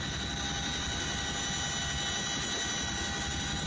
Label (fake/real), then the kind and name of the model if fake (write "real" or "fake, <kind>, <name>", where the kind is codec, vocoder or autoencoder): real